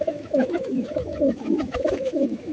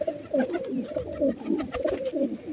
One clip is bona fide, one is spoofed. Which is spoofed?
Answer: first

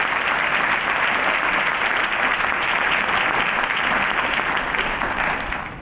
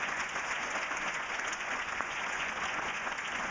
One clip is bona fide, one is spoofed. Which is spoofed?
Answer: second